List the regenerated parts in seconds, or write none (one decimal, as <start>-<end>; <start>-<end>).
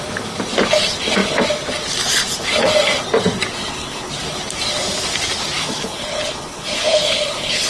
3.5-4.1; 5.6-7.7